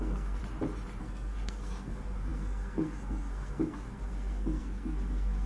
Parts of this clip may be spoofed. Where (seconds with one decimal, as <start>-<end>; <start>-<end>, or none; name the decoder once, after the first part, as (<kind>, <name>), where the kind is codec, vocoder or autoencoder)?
0.0-0.4 (codec, SNAC); 1.0-5.5